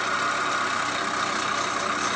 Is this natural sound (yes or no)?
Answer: yes